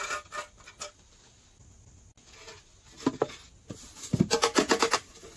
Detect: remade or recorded recorded